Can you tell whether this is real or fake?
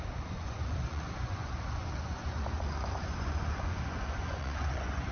fake